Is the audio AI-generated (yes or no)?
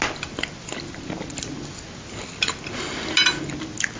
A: no